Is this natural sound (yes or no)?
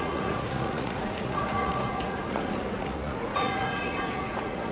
no